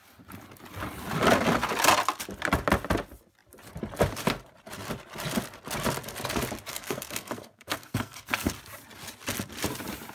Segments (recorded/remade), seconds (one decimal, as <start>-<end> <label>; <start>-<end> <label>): 0.0-6.7 recorded; 6.7-8.5 remade; 8.5-10.1 recorded